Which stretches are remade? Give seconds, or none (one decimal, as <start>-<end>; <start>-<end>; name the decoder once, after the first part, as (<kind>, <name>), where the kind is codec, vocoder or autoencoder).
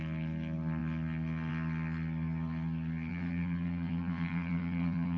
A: 3.1-5.2 (vocoder, WaveNeXt)